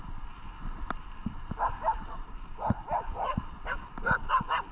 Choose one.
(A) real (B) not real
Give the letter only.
A